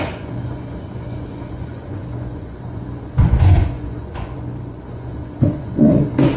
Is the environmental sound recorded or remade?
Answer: remade